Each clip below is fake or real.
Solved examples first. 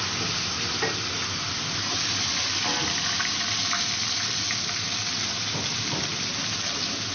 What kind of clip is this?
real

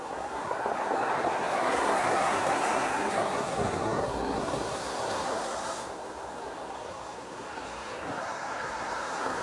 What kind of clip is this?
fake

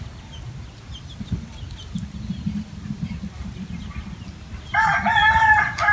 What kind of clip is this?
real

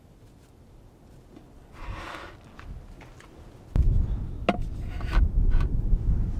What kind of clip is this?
real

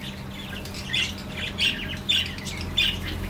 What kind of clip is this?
real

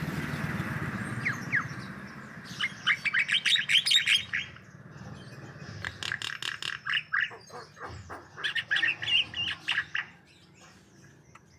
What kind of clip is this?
real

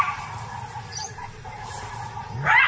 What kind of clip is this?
real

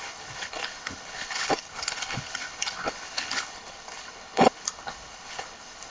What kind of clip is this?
fake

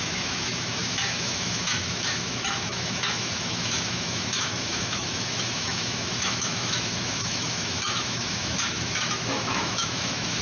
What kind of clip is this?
fake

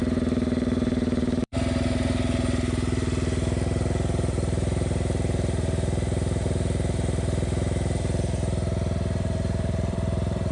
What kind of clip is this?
fake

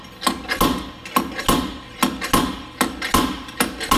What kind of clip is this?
real